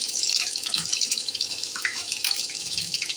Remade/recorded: remade